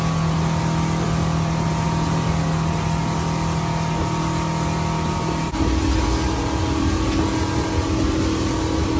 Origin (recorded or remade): recorded